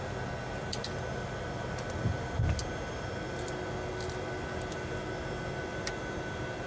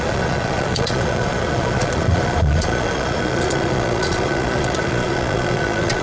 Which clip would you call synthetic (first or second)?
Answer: second